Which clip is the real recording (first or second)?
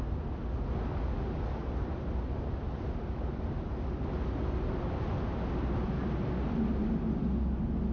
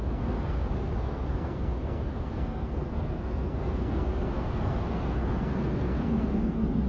first